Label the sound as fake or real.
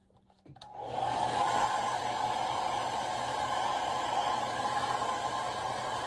real